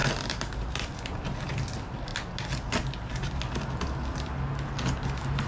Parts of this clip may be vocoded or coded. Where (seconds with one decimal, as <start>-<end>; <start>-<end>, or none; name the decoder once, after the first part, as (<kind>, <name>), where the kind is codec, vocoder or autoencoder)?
0.7-2.1 (vocoder, BigVGAN v2)